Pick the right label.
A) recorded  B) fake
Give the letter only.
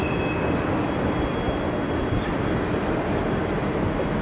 A